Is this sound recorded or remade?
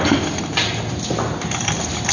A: recorded